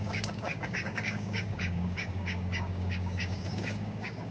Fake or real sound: fake